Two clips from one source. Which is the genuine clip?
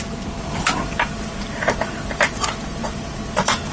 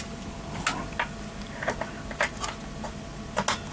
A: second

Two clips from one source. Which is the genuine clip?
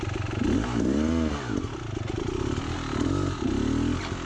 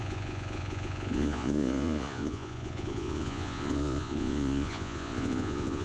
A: first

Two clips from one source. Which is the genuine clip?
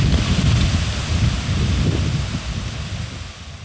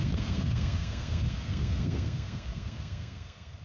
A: first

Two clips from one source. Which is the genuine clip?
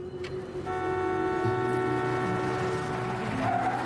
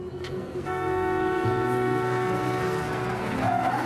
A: first